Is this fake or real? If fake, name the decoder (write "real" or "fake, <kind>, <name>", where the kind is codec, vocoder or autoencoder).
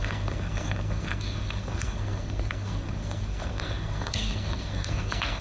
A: fake, codec, SNAC